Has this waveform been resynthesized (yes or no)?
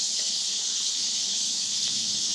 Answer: yes